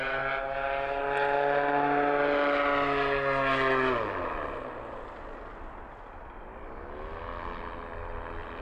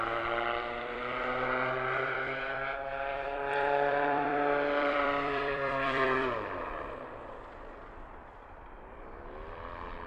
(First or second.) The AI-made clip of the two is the second